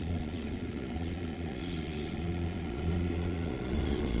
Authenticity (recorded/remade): remade